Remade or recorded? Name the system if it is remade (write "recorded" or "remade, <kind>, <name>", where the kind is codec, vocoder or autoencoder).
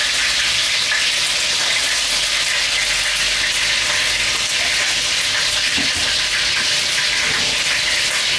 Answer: recorded